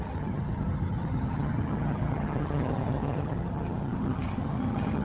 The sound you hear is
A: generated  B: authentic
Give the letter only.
A